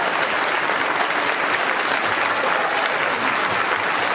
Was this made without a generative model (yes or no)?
yes